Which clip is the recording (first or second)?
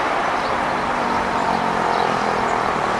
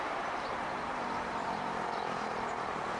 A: first